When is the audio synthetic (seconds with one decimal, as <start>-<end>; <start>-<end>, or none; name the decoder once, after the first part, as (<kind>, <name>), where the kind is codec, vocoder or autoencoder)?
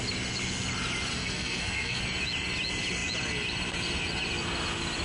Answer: 1.1-2.0 (codec, SNAC)